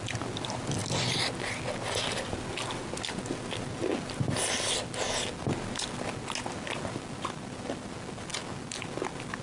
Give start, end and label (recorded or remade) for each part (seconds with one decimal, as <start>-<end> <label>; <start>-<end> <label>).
0.0-9.4 recorded